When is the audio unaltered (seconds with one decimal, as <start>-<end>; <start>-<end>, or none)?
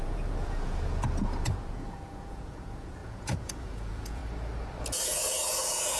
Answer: 4.2-4.8